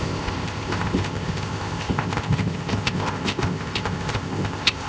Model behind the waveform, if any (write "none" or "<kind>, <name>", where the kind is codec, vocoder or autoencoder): codec, ZipCodec